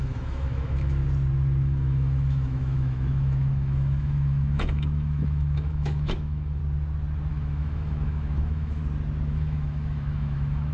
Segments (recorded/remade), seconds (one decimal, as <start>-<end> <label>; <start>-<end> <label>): 0.0-1.0 remade; 1.0-1.6 recorded; 1.6-6.6 remade; 6.6-7.3 recorded; 7.3-8.8 remade; 8.8-9.3 recorded; 9.3-10.7 remade